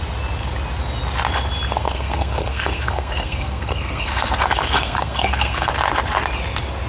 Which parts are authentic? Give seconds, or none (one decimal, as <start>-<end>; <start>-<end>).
0.0-1.8; 5.7-6.9